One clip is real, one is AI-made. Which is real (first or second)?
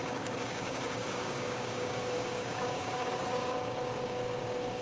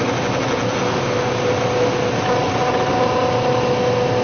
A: second